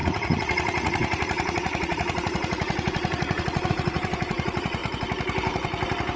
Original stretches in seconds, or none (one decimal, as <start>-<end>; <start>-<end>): 4.8-6.2